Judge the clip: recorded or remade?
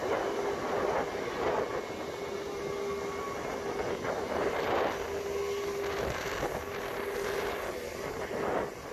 recorded